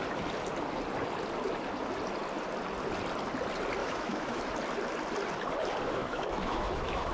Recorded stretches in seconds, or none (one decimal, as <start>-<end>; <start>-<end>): 0.0-3.8; 4.4-6.0